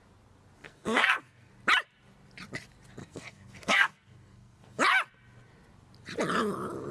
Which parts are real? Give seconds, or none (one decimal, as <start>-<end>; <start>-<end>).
0.0-0.6; 1.5-3.0; 4.8-6.9